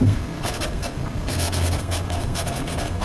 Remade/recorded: remade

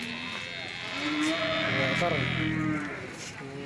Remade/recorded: recorded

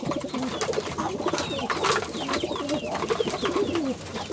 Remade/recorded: recorded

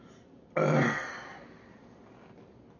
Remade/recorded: recorded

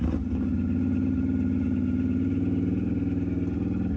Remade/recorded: recorded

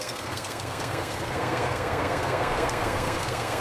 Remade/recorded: remade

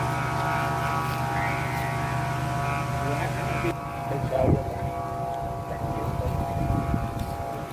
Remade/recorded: recorded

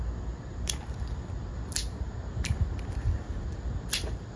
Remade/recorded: recorded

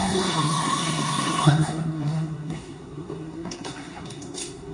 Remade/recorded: remade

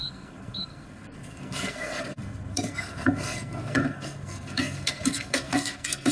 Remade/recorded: remade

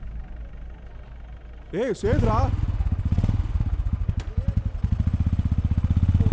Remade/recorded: recorded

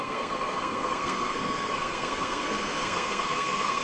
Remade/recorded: remade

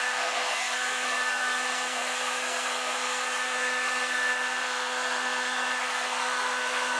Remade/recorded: remade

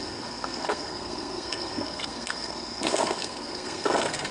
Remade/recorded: remade